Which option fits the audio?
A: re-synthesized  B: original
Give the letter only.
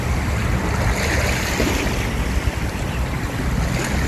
B